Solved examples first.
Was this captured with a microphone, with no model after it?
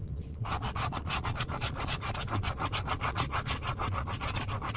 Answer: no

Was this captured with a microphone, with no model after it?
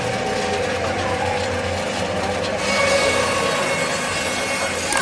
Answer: yes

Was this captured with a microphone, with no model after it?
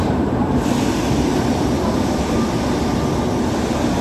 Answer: yes